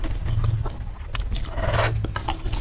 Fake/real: real